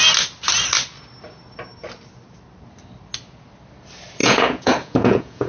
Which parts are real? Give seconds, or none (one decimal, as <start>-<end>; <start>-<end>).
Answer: 0.0-4.2